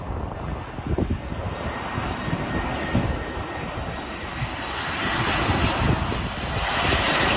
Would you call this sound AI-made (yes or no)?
no